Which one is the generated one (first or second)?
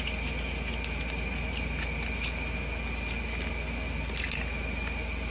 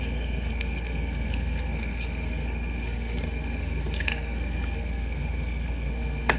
second